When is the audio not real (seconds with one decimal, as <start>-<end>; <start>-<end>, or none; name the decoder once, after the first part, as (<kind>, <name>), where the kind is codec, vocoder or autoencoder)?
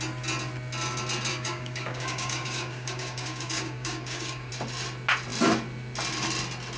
1.3-4.5 (codec, DAC)